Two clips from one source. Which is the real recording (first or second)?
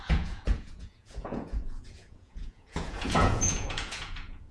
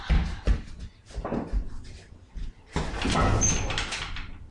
second